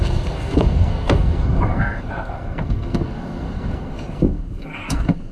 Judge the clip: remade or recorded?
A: remade